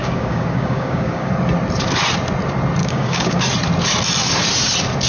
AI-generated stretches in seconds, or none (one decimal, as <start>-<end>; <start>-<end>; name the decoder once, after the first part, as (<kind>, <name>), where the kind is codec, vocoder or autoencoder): 0.0-1.3 (codec, DAC); 2.8-3.4